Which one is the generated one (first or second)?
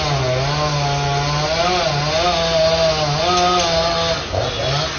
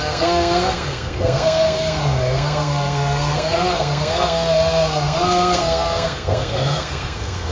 second